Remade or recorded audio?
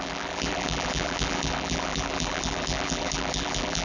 remade